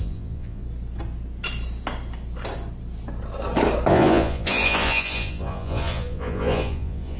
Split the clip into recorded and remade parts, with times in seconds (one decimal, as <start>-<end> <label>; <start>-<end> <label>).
0.0-0.6 remade; 0.6-3.9 recorded; 3.9-7.2 remade